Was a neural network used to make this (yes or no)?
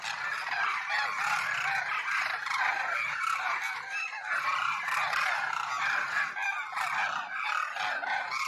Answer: no